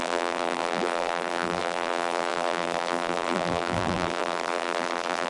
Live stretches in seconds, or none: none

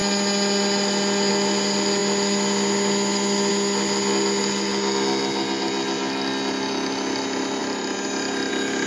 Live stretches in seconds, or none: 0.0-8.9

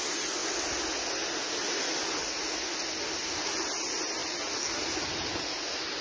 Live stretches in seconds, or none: 0.0-6.0

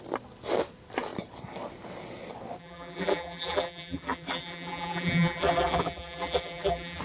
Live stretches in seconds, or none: 0.0-2.6

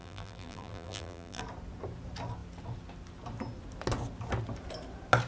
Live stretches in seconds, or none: 1.4-5.3